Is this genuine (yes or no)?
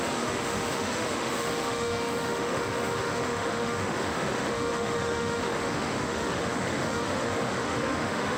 no